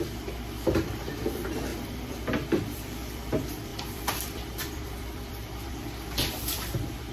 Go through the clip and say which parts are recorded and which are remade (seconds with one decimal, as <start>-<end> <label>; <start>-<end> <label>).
0.0-7.1 remade